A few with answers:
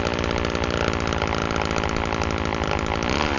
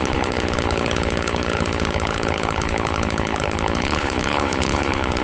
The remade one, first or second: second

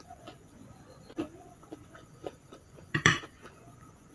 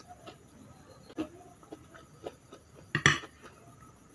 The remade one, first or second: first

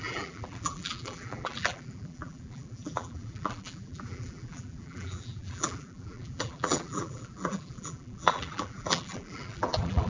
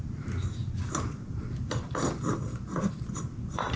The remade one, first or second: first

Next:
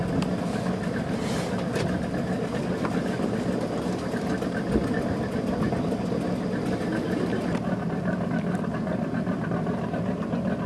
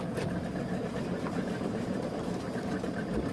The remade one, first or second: second